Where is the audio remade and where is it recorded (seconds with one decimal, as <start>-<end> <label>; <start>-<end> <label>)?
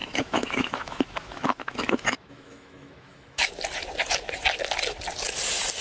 0.0-3.5 remade; 3.5-5.8 recorded